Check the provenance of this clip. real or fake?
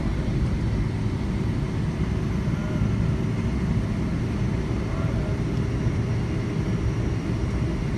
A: real